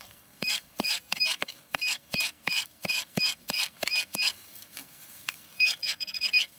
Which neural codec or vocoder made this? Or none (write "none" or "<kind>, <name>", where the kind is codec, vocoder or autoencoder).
codec, SNAC